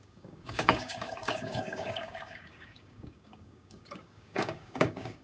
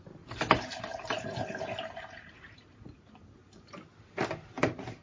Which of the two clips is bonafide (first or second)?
second